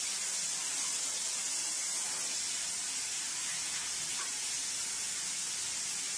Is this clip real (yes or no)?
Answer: yes